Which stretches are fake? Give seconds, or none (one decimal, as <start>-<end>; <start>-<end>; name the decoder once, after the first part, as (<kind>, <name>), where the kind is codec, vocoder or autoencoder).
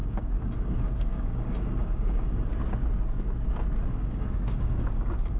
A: 0.0-2.5 (codec, DAC); 3.9-5.4